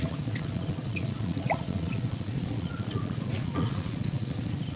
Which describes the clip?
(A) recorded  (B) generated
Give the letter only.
B